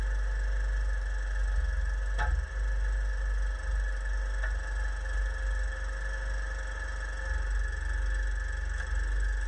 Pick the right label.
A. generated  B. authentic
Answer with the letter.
B